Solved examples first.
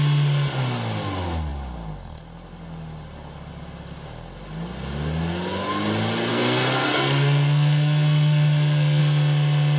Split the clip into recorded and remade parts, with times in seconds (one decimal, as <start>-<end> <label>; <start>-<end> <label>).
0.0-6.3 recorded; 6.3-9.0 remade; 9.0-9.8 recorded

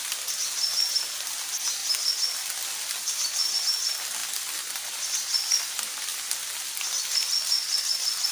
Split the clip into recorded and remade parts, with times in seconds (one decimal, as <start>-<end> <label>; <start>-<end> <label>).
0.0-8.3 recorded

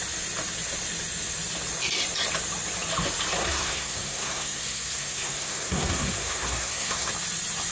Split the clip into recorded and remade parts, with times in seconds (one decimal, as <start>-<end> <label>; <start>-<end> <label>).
0.0-3.4 recorded; 3.4-7.1 remade; 7.1-7.7 recorded

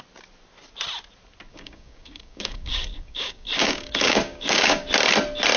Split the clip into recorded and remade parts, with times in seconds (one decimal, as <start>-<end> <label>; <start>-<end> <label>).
0.0-1.5 recorded; 1.5-4.9 remade; 4.9-5.6 recorded

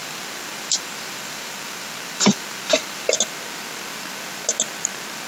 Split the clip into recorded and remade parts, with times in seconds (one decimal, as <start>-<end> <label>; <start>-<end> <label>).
0.0-3.2 remade; 3.2-5.3 recorded

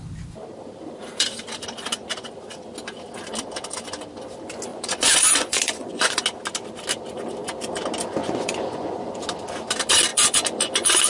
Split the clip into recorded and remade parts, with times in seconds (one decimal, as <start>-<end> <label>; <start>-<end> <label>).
0.0-4.7 recorded; 4.7-6.2 remade; 6.2-8.2 recorded; 8.2-9.1 remade; 9.1-10.1 recorded; 10.1-11.1 remade

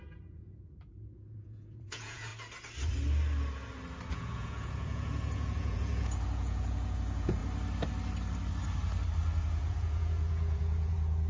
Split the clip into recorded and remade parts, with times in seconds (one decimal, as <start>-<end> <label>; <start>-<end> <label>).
0.0-2.3 remade; 2.3-4.1 recorded; 4.1-7.4 remade; 7.4-9.4 recorded; 9.4-11.3 remade